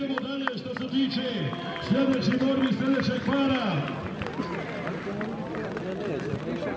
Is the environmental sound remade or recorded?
recorded